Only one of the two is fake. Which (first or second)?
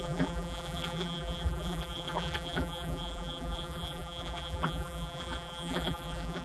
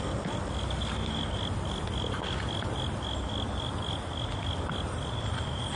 first